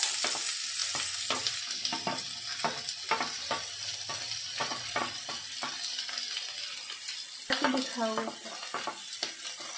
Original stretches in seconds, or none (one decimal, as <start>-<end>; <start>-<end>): 0.0-4.6; 5.3-9.8